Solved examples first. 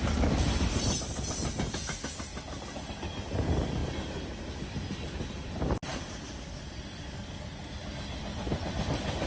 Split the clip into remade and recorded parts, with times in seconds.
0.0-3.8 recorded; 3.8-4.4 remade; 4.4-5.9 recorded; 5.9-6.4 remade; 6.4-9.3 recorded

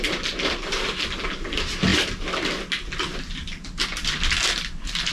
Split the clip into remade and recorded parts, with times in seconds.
0.0-5.1 recorded

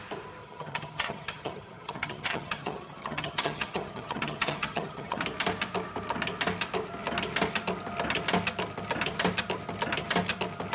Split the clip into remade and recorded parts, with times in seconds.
0.0-0.4 recorded; 0.4-5.2 remade; 5.2-10.7 recorded

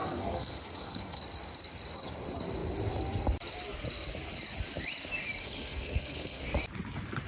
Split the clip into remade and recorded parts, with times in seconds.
0.0-1.2 remade; 1.2-5.4 recorded; 5.4-6.4 remade; 6.4-7.3 recorded

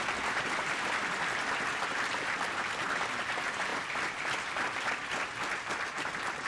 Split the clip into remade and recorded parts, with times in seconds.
0.0-3.7 recorded; 3.7-4.8 remade; 4.8-6.5 recorded

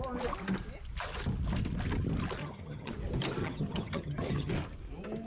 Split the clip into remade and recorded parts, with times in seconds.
0.0-2.4 recorded; 2.4-2.9 remade; 2.9-3.4 recorded; 3.4-4.5 remade; 4.5-5.3 recorded

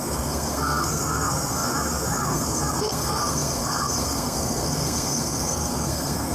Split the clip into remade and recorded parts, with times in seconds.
0.0-6.3 remade